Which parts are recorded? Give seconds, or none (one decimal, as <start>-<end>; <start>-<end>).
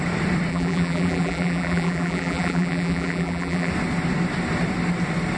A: 0.0-0.5; 3.7-5.4